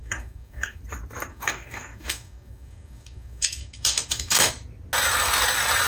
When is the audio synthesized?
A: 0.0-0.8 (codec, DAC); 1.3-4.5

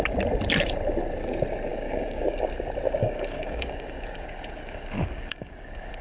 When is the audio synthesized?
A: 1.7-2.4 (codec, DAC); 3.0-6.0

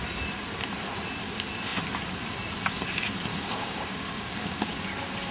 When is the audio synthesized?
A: 3.3-4.7 (codec, DAC)